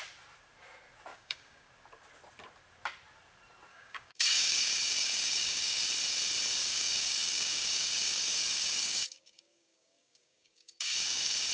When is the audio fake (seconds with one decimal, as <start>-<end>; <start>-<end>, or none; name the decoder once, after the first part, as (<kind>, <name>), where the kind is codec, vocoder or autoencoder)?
1.1-1.7 (codec, DAC); 3.7-5.9; 6.6-11.5